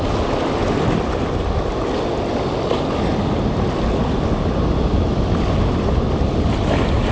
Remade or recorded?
recorded